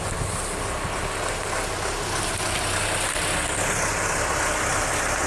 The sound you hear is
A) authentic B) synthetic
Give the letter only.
A